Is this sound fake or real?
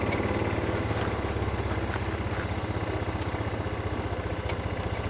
real